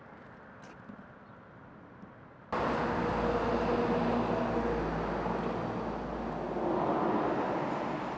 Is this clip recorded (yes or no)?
yes